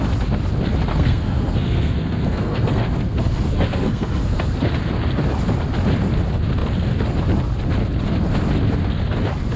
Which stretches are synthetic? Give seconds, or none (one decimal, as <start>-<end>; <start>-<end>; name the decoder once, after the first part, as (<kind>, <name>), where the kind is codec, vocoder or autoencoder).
0.9-4.8 (codec, SNAC)

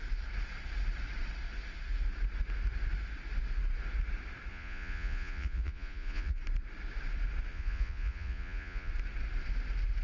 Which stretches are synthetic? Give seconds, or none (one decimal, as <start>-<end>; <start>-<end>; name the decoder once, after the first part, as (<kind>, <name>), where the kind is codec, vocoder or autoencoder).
4.5-6.4 (vocoder, Vocos); 7.5-8.9

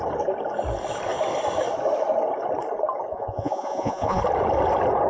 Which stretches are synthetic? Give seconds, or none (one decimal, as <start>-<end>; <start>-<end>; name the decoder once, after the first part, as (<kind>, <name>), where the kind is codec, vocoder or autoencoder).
3.1-4.2 (vocoder, Vocos)

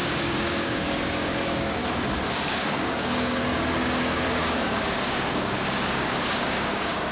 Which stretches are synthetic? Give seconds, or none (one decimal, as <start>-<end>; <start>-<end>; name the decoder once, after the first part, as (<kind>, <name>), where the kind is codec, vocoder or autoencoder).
0.0-1.8 (codec, DAC); 2.5-7.1

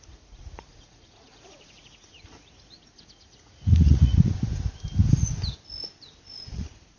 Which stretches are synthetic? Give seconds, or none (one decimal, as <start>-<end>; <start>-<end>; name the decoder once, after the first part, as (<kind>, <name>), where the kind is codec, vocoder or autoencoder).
0.0-4.3 (vocoder, Vocos); 6.5-7.0

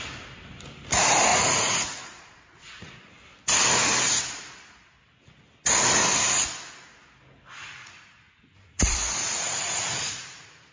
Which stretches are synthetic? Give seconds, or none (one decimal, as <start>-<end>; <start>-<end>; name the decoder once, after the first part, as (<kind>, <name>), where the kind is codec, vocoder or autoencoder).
1.3-3.1 (vocoder, Vocos); 7.6-10.7

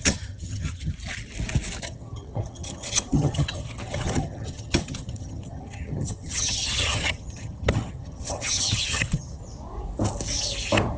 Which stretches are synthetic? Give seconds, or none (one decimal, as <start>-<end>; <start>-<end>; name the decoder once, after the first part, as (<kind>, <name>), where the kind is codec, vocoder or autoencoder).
0.0-0.9 (vocoder, HiFi-GAN); 1.8-9.4